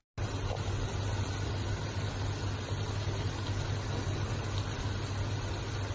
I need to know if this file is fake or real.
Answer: real